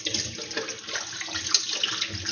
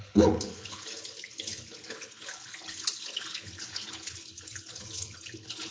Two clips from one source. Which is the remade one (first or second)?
second